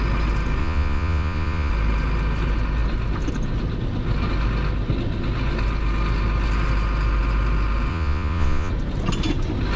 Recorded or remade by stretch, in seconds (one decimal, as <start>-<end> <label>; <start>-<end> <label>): 0.0-0.6 recorded; 0.6-1.7 remade; 1.7-7.9 recorded; 7.9-8.7 remade; 8.7-9.8 recorded